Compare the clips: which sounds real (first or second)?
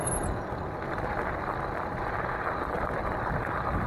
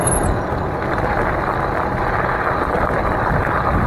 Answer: second